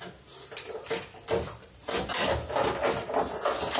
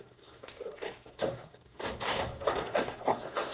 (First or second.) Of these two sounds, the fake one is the second